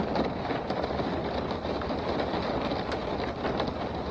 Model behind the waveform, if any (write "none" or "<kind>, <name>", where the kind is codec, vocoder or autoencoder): none